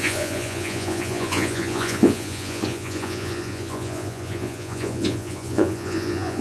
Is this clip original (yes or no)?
no